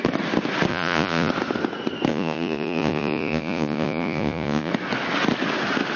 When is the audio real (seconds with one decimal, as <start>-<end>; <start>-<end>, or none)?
0.0-0.7; 1.3-2.1; 4.7-6.0